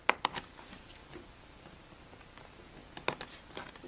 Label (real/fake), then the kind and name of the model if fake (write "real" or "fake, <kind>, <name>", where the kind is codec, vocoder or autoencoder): real